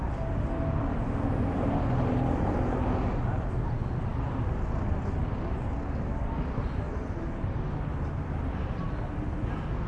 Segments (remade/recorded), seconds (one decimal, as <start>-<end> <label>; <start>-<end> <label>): 0.0-9.9 recorded